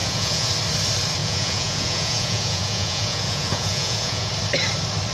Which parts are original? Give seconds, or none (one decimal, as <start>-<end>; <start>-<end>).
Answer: 0.5-1.2; 4.3-5.1